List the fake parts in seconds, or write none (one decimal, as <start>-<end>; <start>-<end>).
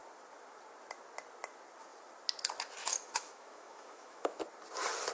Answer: 2.8-4.4